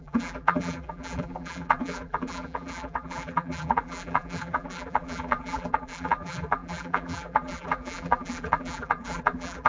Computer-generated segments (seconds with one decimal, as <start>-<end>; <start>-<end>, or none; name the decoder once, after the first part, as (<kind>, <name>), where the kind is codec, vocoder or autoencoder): 0.0-9.7 (vocoder, BigVGAN v2)